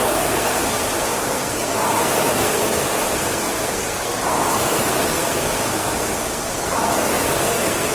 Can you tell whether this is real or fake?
fake